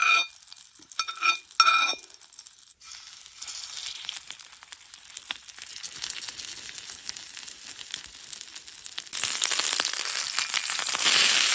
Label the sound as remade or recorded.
recorded